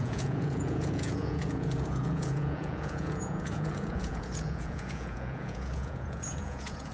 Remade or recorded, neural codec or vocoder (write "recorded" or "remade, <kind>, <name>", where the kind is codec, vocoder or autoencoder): remade, vocoder, Vocos